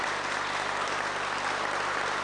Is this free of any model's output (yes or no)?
yes